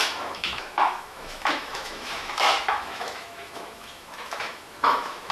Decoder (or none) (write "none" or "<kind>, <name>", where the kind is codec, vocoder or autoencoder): autoencoder, DAC-VAE